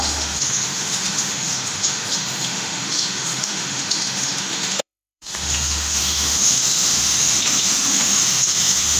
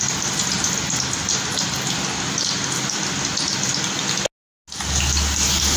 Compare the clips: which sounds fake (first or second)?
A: first